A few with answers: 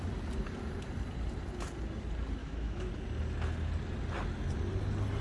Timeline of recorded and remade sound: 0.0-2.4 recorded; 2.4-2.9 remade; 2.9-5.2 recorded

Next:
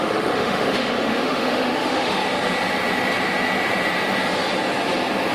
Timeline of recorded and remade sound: 0.0-2.2 remade; 2.2-5.3 recorded

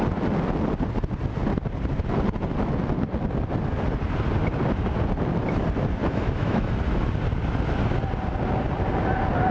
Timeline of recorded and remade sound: 0.0-6.0 recorded; 6.0-6.7 remade; 6.7-9.5 recorded

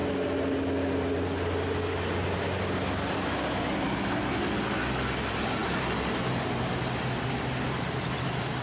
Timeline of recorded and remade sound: 0.0-8.6 recorded

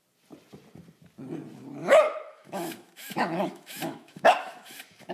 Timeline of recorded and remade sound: 0.0-1.8 recorded; 1.8-5.1 remade

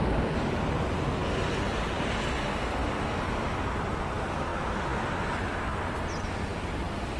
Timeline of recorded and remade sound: 0.0-7.2 recorded

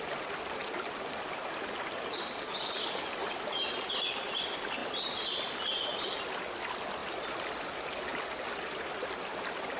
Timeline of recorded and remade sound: 0.0-9.8 recorded